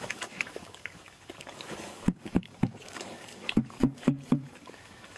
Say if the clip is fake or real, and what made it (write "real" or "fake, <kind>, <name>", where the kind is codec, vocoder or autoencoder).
fake, codec, DAC